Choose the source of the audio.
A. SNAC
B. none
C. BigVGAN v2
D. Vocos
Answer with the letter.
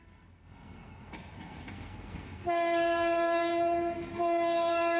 A